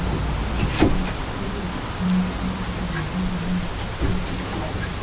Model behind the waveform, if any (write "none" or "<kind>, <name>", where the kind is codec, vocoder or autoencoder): none